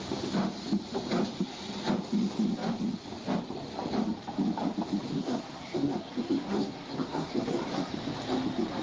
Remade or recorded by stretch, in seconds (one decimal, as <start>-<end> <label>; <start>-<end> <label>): 0.0-5.1 recorded; 5.1-7.9 remade; 7.9-8.8 recorded